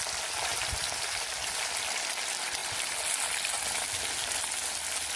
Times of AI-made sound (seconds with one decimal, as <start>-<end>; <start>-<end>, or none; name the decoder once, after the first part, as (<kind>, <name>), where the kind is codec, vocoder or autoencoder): none